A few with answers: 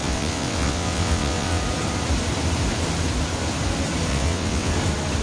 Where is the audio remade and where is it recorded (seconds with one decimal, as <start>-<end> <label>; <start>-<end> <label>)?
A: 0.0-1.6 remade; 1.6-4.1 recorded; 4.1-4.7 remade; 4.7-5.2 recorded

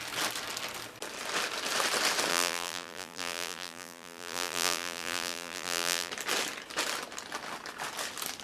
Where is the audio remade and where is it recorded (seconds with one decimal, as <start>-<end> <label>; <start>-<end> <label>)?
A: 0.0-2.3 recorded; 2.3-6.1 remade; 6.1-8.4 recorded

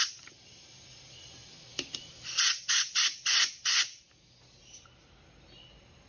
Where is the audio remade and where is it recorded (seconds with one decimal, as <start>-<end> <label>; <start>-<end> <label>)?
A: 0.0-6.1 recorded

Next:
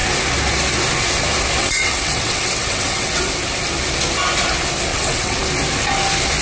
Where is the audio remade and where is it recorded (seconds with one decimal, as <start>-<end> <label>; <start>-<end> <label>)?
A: 0.0-1.6 recorded; 1.6-3.3 remade; 3.3-4.9 recorded; 4.9-5.4 remade; 5.4-6.4 recorded

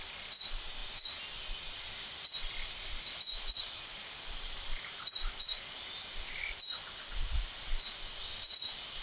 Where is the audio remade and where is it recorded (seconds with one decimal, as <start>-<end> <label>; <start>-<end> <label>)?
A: 0.0-3.9 recorded; 3.9-7.9 remade; 7.9-9.0 recorded

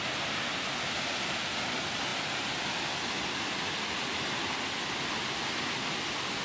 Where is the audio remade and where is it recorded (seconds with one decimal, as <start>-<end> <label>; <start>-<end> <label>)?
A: 0.0-6.4 recorded